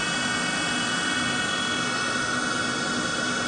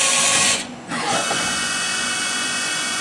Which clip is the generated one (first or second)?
second